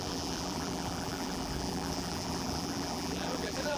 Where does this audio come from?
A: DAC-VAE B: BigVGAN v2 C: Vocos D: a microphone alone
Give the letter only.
B